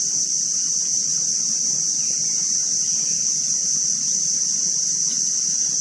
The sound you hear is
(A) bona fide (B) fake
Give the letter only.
A